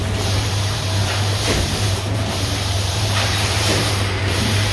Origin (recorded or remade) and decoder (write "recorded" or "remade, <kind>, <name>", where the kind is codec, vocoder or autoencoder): remade, vocoder, BigVGAN v2